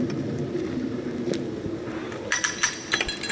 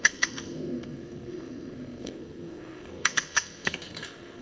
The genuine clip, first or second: first